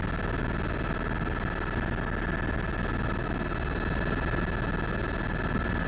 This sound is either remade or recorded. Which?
recorded